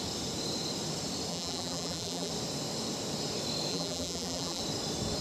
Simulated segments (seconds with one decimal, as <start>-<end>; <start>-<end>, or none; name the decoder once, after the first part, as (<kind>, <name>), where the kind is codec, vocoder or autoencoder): 1.3-2.3 (vocoder, BigVGAN v2); 3.7-4.6